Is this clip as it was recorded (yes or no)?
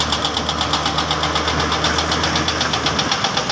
yes